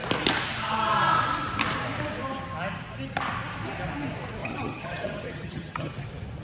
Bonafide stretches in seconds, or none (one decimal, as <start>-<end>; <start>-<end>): 0.0-4.4; 5.9-6.4